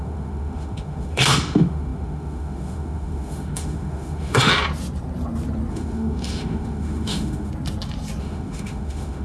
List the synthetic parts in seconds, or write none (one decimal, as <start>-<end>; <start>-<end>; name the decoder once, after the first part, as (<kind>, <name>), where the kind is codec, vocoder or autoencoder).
0.0-4.5 (autoencoder, DAC-VAE); 5.7-7.5; 8.2-9.2